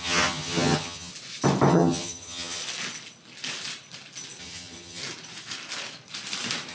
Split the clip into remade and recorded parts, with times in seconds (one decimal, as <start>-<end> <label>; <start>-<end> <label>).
0.0-1.1 remade; 1.1-1.7 recorded; 1.7-2.6 remade; 2.6-4.4 recorded; 4.4-5.0 remade; 5.0-6.7 recorded